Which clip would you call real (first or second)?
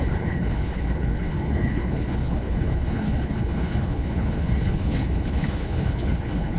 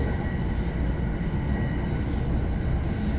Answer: second